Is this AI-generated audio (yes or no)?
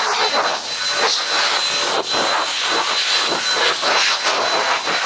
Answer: no